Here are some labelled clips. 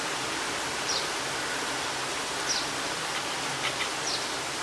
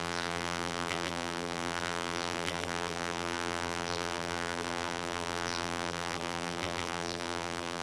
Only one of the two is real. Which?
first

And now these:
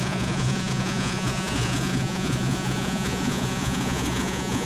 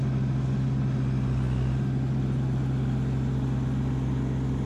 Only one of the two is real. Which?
second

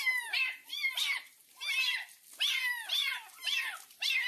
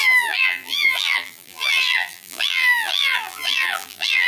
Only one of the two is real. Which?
first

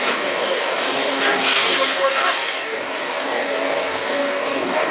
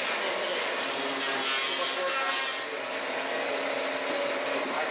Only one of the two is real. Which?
second